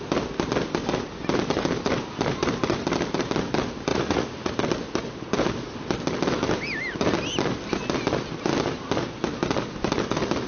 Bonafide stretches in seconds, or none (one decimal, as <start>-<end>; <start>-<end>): 0.0-3.9; 4.5-10.5